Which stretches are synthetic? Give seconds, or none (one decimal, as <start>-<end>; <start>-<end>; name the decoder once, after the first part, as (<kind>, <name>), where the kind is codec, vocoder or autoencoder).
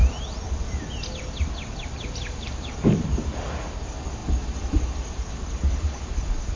none